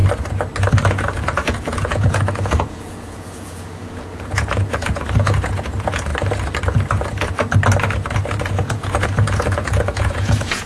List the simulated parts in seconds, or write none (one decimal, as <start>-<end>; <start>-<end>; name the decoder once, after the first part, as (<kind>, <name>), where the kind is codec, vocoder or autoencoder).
0.9-6.1 (vocoder, Vocos); 8.4-10.7